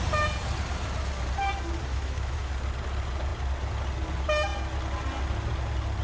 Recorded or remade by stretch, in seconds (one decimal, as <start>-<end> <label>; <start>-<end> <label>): 0.0-1.9 recorded; 1.9-2.5 remade; 2.5-6.0 recorded